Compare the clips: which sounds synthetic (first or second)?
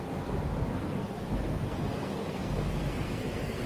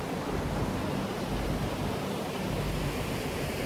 first